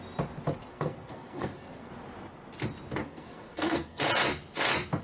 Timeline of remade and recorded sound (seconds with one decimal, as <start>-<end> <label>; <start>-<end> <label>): 0.0-0.7 recorded; 0.7-1.9 remade; 1.9-3.0 recorded; 3.0-4.0 remade; 4.0-5.0 recorded